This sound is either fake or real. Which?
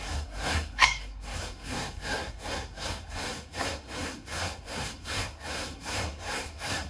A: fake